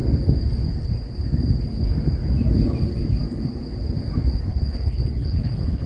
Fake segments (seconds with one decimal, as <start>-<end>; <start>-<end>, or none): 4.5-5.9